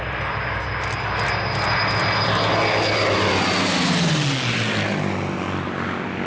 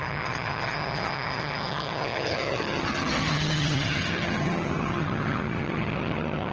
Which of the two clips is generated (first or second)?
second